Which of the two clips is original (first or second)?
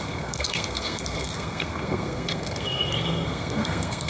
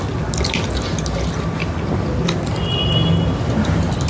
second